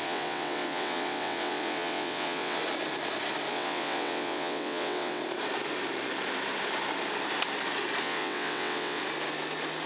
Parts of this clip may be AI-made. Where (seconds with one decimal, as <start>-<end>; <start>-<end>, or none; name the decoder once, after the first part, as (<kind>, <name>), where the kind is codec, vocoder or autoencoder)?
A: 0.0-2.6 (vocoder, WaveNeXt); 3.5-5.2; 8.0-9.0